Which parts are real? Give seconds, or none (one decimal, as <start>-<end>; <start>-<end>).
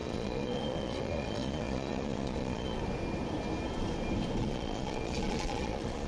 2.8-4.4